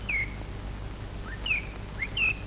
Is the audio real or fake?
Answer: real